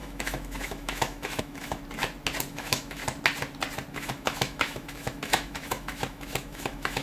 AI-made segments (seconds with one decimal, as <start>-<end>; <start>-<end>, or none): 0.0-1.8; 2.5-3.0; 3.9-7.0